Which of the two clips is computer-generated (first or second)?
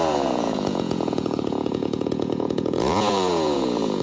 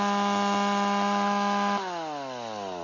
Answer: first